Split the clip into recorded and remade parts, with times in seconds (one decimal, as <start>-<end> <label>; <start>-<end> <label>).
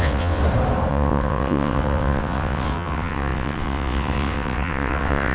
0.0-0.4 remade; 0.4-0.9 recorded; 0.9-5.3 remade